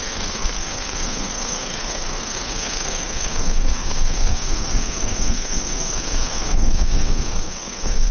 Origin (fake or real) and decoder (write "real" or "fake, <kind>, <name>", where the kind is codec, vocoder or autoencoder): fake, codec, SNAC